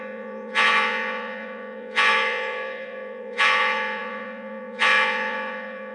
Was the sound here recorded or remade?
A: remade